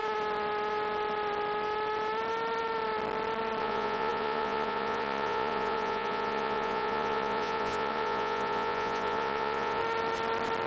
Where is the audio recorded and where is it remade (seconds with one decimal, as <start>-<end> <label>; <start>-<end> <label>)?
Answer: 0.0-3.6 recorded; 3.6-9.8 remade; 9.8-10.7 recorded